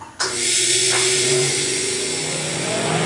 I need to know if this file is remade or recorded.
remade